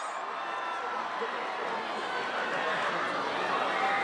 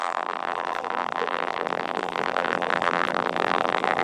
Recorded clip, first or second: first